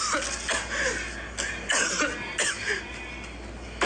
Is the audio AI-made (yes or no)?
no